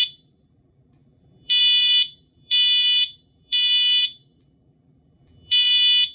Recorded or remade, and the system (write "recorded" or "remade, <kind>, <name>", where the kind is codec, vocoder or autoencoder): remade, vocoder, BigVGAN v2